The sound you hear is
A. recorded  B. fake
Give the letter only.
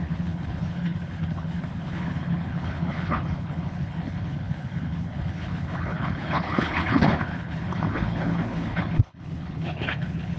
B